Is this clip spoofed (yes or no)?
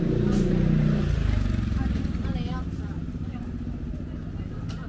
no